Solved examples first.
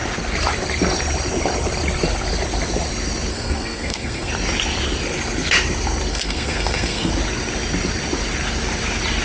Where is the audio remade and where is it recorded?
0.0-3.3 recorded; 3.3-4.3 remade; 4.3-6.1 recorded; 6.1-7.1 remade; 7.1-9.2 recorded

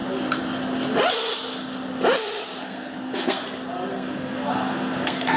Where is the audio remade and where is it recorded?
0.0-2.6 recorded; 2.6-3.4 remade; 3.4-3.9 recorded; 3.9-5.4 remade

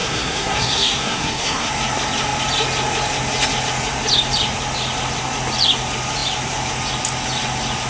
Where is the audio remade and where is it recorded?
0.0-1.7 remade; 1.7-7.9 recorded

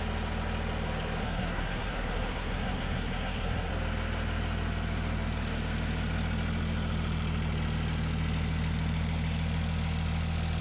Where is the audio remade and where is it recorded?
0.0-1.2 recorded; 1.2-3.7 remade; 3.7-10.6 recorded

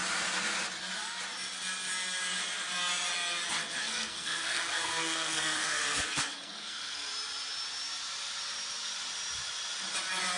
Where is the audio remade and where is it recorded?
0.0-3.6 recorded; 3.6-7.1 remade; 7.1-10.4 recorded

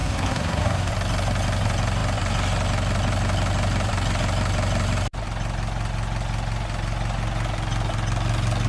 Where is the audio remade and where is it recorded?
0.0-0.9 remade; 0.9-8.7 recorded

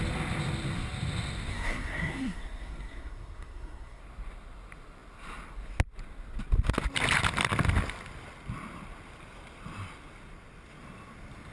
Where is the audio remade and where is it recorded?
0.0-1.5 recorded; 1.5-4.0 remade; 4.0-11.5 recorded